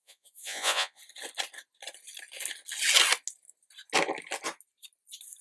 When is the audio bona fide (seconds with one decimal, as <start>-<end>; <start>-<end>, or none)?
1.0-5.4